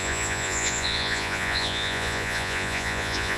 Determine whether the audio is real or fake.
fake